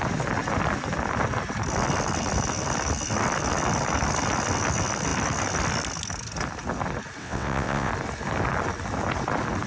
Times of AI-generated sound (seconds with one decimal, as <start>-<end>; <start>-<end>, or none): 7.2-7.9